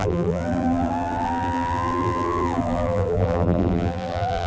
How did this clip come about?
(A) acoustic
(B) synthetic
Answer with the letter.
B